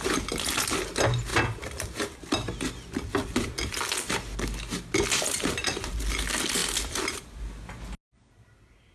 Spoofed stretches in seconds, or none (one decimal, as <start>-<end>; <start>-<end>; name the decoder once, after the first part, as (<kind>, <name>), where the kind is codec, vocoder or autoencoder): none

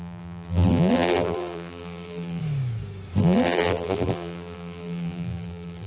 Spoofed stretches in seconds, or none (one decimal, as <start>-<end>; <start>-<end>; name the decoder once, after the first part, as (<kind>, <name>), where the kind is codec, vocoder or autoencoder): 0.0-2.4 (vocoder, BigVGAN v2); 3.2-5.9

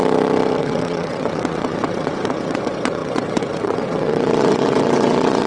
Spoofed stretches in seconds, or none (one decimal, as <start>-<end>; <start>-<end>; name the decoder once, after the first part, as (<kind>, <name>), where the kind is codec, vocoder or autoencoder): 0.6-5.5 (vocoder, WaveNeXt)

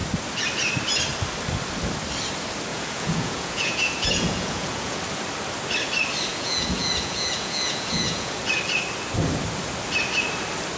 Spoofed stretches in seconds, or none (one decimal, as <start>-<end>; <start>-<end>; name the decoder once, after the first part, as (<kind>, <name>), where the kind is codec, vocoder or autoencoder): 2.7-5.0 (vocoder, Vocos); 6.3-8.4